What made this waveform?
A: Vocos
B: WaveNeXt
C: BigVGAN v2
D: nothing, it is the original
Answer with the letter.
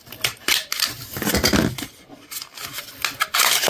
D